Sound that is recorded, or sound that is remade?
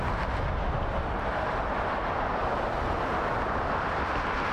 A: recorded